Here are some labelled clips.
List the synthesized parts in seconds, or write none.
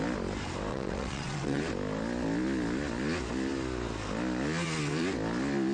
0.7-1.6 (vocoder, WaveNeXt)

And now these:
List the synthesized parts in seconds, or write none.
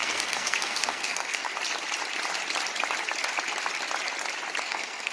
0.0-1.5 (codec, SNAC); 4.6-5.1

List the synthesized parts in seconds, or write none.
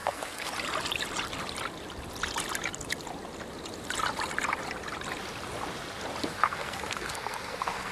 0.0-0.5 (codec, SNAC); 6.2-7.9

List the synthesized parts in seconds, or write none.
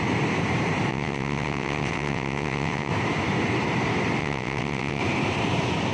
0.9-2.9 (vocoder, WaveNeXt); 4.2-5.0